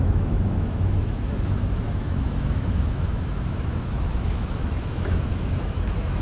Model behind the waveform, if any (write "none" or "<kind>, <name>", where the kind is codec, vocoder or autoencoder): autoencoder, DAC-VAE